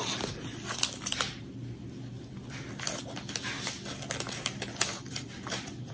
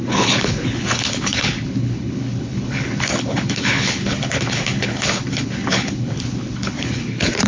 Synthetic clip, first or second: second